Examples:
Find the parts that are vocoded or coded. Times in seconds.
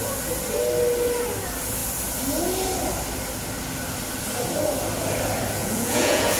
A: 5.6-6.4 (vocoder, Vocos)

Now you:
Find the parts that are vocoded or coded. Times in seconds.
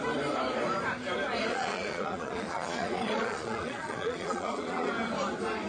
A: 1.5-4.9 (vocoder, Vocos)